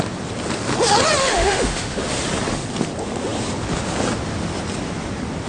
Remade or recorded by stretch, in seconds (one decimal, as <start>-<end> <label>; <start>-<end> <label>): 0.0-1.2 recorded; 1.2-2.0 remade; 2.0-5.5 recorded